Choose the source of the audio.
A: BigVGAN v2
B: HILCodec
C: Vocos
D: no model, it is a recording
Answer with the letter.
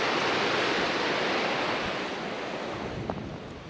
D